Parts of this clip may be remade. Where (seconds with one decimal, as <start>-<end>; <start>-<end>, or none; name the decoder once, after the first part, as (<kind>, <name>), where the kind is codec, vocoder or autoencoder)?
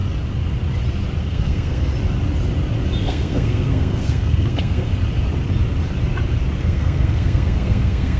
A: 1.2-1.9 (codec, SNAC); 3.0-4.9; 6.6-8.2